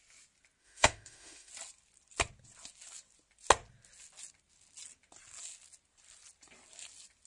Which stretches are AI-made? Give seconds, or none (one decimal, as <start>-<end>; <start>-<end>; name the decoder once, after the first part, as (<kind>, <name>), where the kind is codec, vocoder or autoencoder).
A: 0.6-1.5 (autoencoder, DAC-VAE)